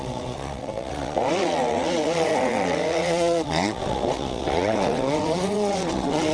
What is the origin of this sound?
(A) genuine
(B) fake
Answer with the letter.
B